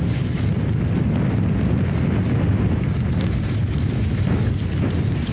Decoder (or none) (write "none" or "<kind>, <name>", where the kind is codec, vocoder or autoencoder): none